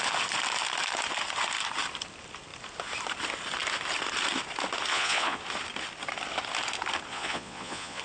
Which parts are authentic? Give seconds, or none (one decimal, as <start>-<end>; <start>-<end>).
0.0-4.9; 5.4-7.1